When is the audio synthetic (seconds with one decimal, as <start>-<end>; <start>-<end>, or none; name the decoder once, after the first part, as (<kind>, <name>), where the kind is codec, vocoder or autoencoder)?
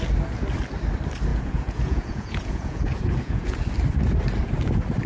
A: 1.3-3.6 (vocoder, Vocos)